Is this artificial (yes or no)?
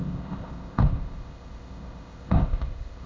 yes